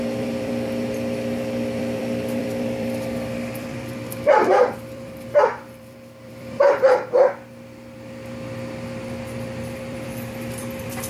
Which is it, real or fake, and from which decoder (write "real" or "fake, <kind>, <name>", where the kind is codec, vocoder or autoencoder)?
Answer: fake, vocoder, BigVGAN v2